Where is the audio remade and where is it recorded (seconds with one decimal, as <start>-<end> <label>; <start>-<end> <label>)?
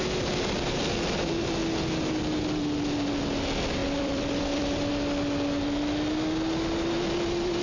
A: 0.0-3.8 recorded; 3.8-4.9 remade; 4.9-7.6 recorded